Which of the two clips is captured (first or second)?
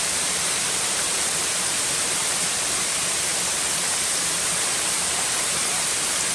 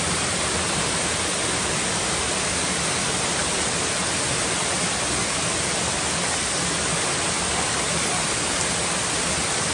second